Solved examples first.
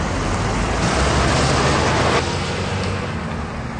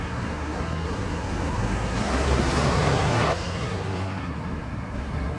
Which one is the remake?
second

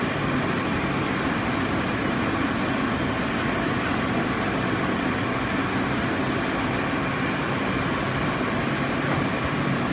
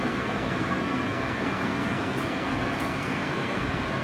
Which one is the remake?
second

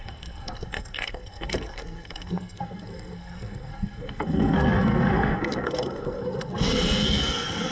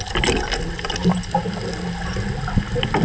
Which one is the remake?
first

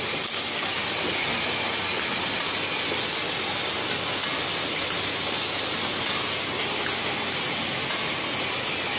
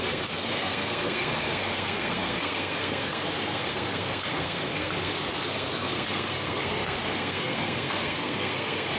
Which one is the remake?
second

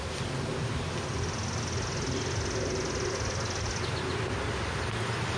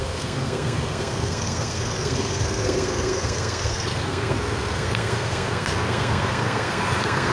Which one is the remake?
second